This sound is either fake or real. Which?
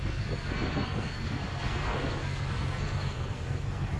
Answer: fake